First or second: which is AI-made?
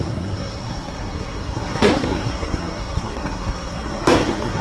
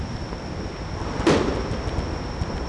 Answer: first